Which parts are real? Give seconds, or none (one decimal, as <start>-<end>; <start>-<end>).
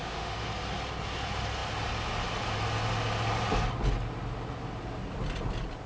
0.5-5.9